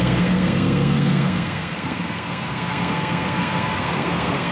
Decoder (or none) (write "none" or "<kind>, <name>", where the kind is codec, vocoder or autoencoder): codec, SNAC